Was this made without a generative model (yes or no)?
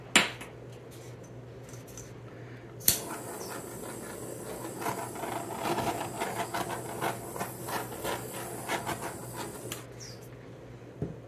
yes